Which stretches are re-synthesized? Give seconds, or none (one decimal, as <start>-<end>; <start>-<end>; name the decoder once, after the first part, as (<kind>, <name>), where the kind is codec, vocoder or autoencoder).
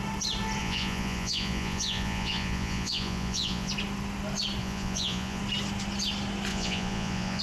0.6-3.7 (vocoder, Vocos); 4.6-5.4; 6.5-7.4